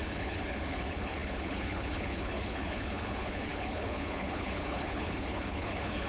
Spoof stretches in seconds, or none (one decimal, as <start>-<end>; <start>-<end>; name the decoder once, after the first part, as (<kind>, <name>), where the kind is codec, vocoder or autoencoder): 0.0-6.1 (codec, HILCodec)